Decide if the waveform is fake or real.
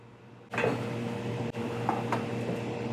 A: real